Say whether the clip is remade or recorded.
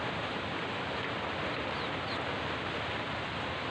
recorded